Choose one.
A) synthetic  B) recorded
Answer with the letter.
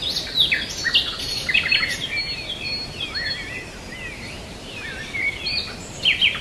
B